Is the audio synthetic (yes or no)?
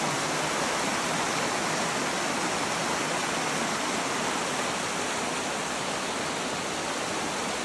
no